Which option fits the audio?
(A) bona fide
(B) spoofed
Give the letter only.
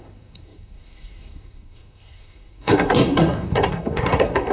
B